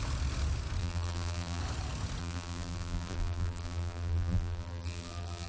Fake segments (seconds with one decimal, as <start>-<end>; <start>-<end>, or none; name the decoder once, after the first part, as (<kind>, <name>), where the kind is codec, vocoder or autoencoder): 0.8-1.6 (vocoder, BigVGAN v2); 2.2-5.5